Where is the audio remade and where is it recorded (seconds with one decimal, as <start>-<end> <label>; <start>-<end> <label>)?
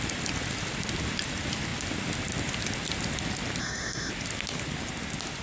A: 0.0-3.6 recorded; 3.6-4.1 remade; 4.1-5.4 recorded